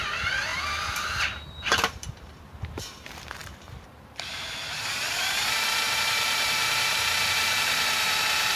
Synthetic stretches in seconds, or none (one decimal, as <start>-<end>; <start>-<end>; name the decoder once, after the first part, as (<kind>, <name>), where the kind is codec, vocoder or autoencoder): 0.0-8.6 (vocoder, BigVGAN v2)